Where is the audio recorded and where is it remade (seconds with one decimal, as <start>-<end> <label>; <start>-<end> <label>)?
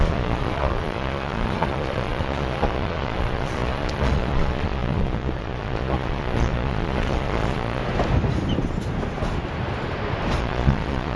0.0-7.8 remade; 7.8-10.4 recorded; 10.4-11.2 remade